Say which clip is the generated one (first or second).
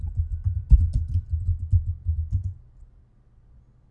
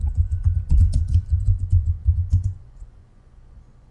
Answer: second